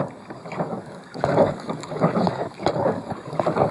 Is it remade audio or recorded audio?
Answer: remade